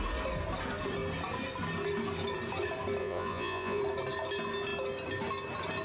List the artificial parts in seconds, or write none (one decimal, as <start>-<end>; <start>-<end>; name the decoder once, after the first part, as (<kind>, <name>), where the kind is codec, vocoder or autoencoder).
3.0-3.8 (vocoder, Vocos)